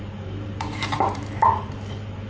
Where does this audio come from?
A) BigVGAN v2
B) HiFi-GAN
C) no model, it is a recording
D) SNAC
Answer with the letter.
A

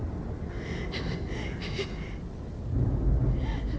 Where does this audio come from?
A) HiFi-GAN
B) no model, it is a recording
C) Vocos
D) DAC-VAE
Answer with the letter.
B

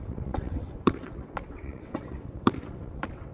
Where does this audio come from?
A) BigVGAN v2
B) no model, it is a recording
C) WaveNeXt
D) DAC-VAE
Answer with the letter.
C